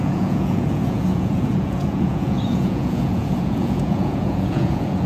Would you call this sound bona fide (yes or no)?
no